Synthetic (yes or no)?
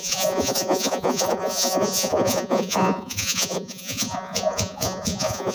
yes